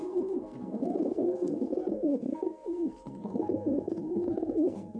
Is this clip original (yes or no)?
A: no